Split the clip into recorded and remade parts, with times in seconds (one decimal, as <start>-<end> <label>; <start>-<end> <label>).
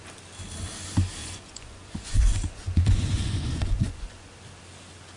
0.0-1.2 recorded; 1.2-4.3 remade; 4.3-5.2 recorded